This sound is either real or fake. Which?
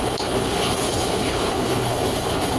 fake